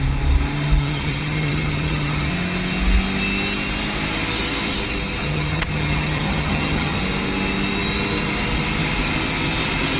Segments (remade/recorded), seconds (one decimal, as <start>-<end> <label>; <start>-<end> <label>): 0.0-0.8 recorded; 0.8-2.3 remade; 2.3-5.2 recorded; 5.2-7.0 remade; 7.0-10.0 recorded